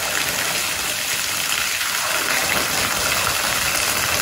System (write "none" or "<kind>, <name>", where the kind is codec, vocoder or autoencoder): none